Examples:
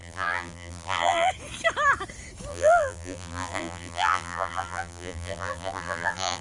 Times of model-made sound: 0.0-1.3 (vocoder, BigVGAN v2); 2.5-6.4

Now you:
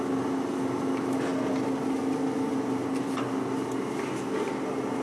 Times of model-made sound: none

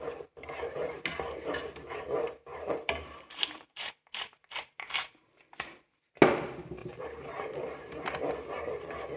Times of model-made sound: 2.5-3.9 (vocoder, BigVGAN v2); 6.8-8.2